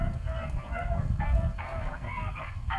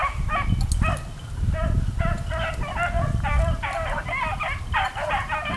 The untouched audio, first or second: second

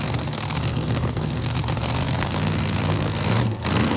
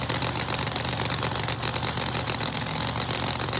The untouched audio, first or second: second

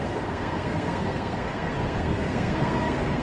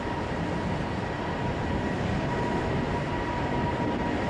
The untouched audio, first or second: second